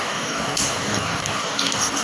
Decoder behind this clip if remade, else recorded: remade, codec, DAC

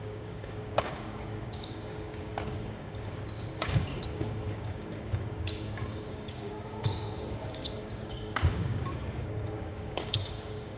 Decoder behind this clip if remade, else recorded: remade, codec, DAC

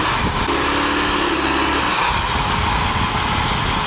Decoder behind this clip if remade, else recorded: recorded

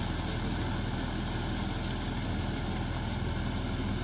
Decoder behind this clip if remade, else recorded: recorded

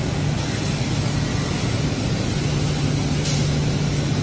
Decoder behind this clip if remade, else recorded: recorded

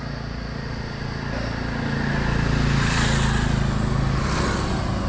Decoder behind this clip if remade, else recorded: recorded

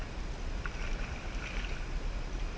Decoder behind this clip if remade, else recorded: recorded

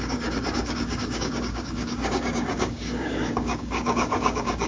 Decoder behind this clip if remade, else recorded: remade, codec, DAC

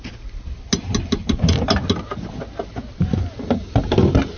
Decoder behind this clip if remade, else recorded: recorded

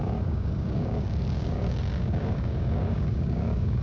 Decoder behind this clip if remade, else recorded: remade, codec, DAC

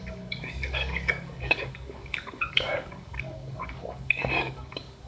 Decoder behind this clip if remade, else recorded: remade, codec, DAC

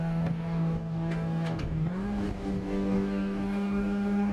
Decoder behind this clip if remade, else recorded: remade, codec, DAC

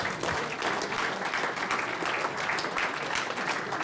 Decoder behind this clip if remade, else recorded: recorded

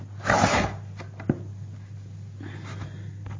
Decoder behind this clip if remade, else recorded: recorded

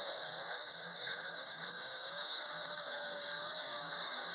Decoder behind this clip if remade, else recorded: remade, codec, DAC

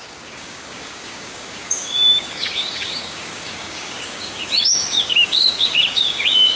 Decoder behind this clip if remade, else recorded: remade, codec, DAC